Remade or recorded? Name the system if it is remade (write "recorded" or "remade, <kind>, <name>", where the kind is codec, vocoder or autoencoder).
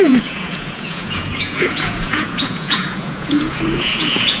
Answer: remade, vocoder, Vocos